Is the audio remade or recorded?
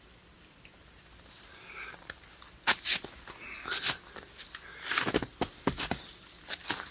recorded